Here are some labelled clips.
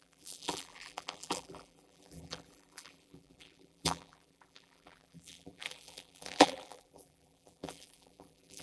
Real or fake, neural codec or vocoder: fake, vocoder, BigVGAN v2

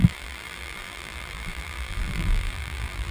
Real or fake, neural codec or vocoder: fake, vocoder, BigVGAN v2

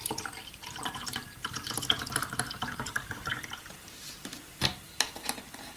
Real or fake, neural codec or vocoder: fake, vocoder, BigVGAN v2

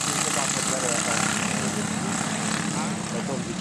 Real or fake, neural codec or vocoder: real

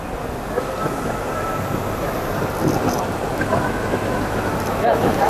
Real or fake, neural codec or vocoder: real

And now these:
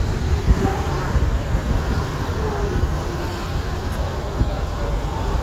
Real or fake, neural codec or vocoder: real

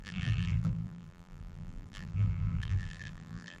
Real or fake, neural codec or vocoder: fake, vocoder, BigVGAN v2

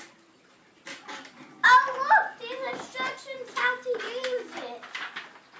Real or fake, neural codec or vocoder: real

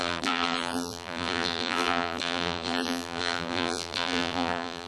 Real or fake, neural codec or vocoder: fake, vocoder, BigVGAN v2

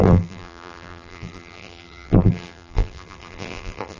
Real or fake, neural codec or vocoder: fake, vocoder, BigVGAN v2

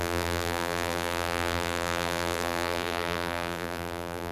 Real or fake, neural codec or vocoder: fake, vocoder, BigVGAN v2